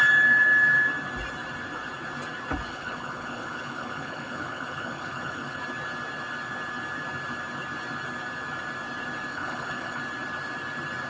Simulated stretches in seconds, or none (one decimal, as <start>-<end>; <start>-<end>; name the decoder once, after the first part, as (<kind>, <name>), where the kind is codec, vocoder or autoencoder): 2.7-5.6 (codec, HILCodec); 9.3-10.0